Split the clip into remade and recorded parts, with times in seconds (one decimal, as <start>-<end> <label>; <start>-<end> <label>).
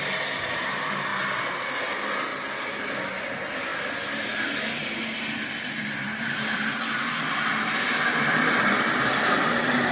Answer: 0.0-1.1 remade; 1.1-1.6 recorded; 1.6-2.3 remade; 2.3-2.8 recorded; 2.8-3.7 remade; 3.7-5.0 recorded; 5.0-9.9 remade